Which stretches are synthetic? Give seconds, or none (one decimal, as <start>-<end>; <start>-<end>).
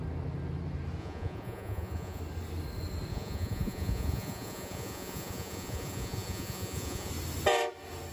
1.0-2.2; 3.1-7.1